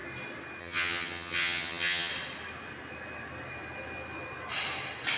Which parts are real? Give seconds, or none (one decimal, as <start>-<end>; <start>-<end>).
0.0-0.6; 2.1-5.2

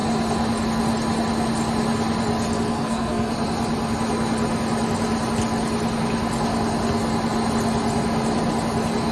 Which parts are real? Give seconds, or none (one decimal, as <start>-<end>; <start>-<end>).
0.0-2.7; 3.3-9.1

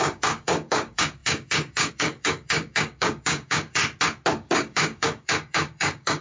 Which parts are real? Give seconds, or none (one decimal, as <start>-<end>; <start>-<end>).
3.8-4.3

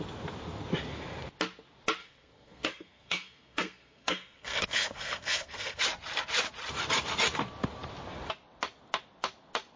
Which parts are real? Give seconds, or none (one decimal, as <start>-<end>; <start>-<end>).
0.0-2.0; 5.8-9.8

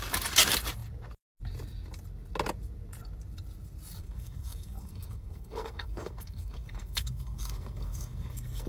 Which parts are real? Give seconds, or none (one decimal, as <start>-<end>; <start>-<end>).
0.0-4.0